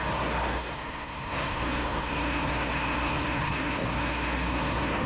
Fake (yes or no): yes